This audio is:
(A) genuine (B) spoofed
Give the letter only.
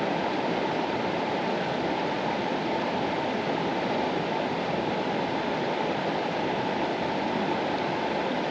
B